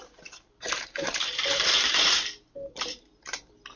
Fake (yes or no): yes